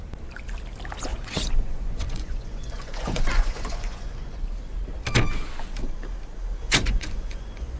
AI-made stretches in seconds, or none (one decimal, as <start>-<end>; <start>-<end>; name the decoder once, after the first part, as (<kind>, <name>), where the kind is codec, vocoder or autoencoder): 1.1-4.4 (vocoder, Vocos); 6.6-7.8